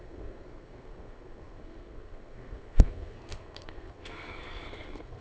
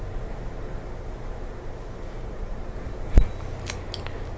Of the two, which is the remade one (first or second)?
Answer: first